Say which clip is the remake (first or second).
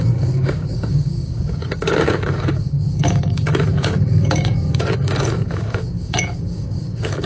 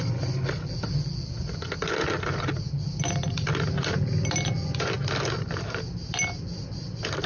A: first